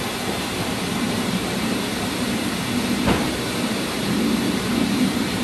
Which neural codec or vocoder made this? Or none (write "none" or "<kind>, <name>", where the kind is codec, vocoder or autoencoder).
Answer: vocoder, BigVGAN v2